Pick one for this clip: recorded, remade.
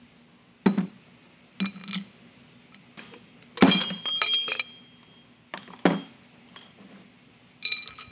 recorded